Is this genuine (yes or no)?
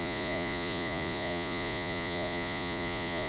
no